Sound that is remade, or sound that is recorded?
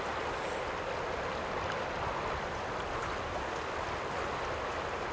recorded